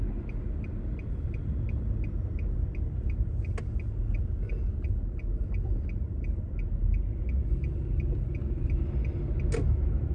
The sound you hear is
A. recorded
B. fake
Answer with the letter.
A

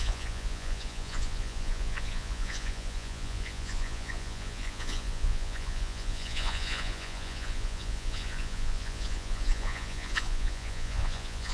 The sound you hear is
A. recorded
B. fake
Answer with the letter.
B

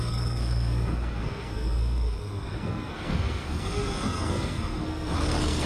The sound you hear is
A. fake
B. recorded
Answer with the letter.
A